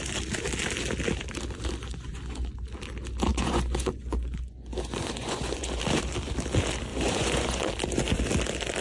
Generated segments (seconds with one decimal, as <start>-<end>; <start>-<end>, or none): 1.8-2.5; 3.3-5.8; 6.9-7.7

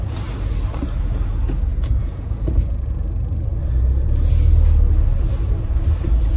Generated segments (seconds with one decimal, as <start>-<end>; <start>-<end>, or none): 1.7-2.8

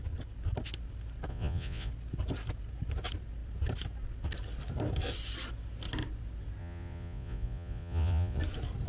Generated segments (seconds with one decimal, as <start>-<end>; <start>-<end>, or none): 1.3-1.9; 6.6-8.4

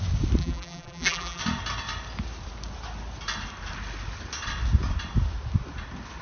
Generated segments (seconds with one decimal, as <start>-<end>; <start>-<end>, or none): 0.4-1.4

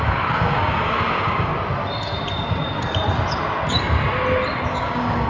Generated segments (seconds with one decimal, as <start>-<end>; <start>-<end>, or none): 0.0-1.5; 4.7-5.3